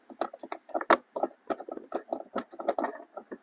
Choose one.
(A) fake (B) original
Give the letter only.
B